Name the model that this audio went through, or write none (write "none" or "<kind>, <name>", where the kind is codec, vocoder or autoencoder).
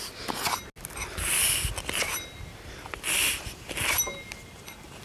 none